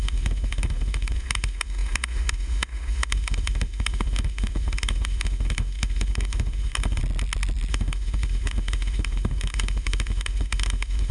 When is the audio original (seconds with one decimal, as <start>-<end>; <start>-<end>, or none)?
7.0-7.7